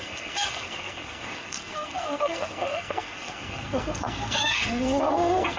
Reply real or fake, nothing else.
fake